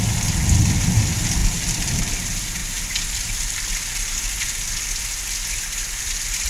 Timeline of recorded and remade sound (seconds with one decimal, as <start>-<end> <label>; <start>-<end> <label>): 0.0-6.5 recorded